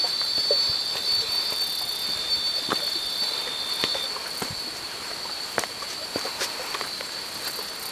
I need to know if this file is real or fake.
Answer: fake